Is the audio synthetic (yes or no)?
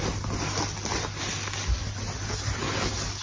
no